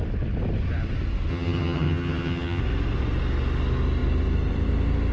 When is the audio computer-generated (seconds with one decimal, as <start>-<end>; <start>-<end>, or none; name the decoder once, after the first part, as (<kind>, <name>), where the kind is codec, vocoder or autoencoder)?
1.3-2.6 (vocoder, HiFi-GAN)